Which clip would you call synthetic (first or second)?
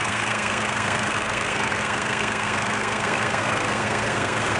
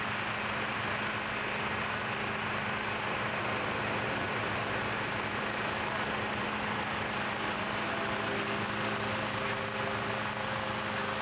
first